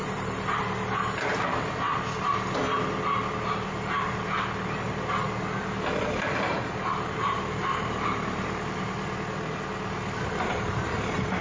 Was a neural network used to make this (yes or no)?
no